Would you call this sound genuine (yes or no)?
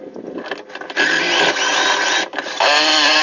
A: yes